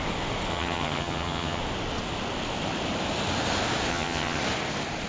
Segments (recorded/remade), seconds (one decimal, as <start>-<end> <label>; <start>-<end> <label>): 0.0-0.5 recorded; 0.5-1.6 remade; 1.6-3.9 recorded; 3.9-4.4 remade; 4.4-5.1 recorded